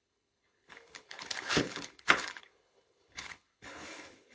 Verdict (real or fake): fake